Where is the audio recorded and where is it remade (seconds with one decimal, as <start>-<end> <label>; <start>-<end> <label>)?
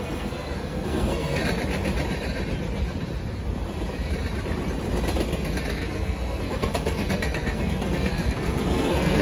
0.0-1.4 remade; 1.4-5.7 recorded; 5.7-9.2 remade